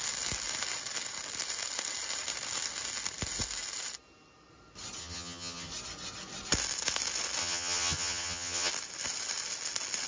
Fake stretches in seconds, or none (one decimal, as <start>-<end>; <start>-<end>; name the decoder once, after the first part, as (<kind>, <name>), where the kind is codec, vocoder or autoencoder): 5.0-5.7 (vocoder, HiFi-GAN); 7.4-8.7